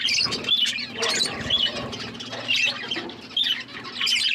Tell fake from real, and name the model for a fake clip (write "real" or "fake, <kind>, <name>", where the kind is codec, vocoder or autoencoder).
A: real